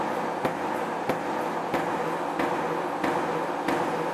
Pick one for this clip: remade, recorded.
recorded